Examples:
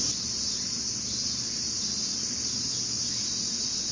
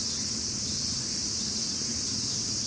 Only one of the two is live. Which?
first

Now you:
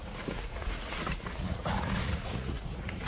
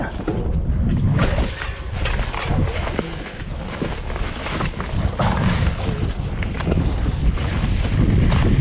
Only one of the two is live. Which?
second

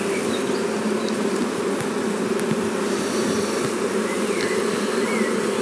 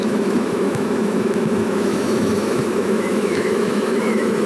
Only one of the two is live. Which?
first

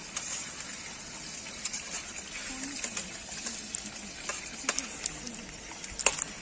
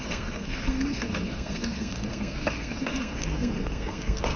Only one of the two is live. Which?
first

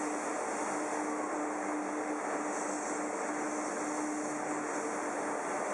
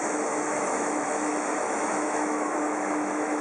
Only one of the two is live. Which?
first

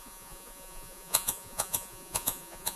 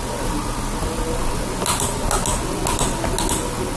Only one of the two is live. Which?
second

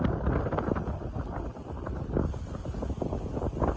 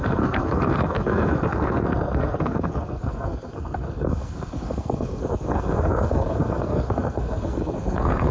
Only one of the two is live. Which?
first